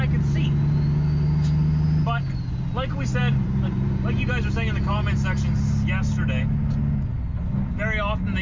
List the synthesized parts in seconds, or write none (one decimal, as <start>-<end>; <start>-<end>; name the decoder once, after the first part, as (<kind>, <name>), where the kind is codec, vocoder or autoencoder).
none